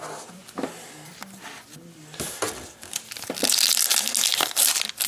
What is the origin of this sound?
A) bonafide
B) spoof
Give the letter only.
A